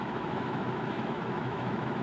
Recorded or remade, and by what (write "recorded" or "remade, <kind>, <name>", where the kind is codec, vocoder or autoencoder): remade, autoencoder, DAC-VAE